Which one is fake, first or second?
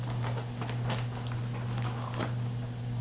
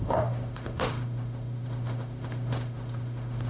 second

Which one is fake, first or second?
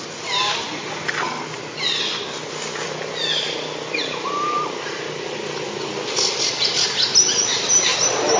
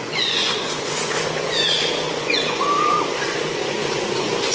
second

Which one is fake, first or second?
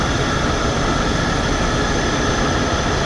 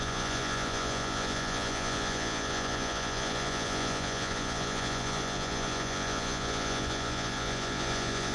second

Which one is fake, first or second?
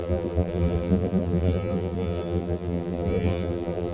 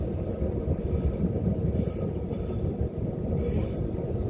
first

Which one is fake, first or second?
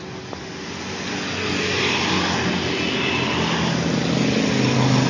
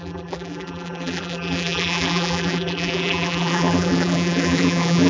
second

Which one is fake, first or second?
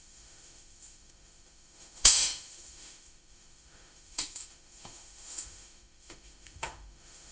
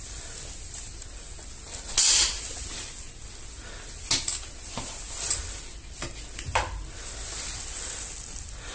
first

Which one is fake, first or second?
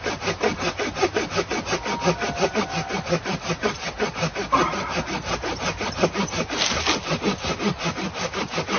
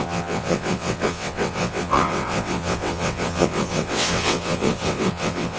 second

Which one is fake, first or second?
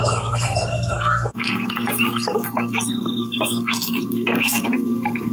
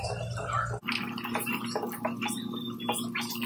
first